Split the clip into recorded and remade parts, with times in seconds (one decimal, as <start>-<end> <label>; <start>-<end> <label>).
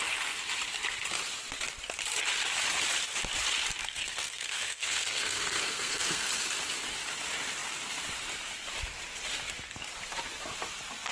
0.0-3.8 recorded; 3.8-6.3 remade; 6.3-11.1 recorded